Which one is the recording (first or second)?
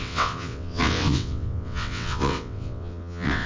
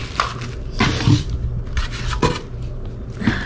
second